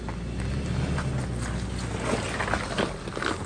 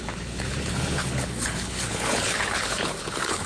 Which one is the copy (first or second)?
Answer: second